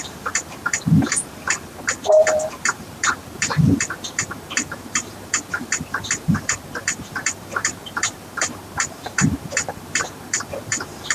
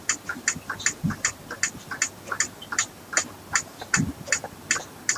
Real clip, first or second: second